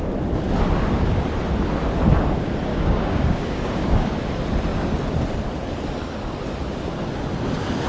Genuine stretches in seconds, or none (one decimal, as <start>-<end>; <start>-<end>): 0.0-2.7; 4.1-7.9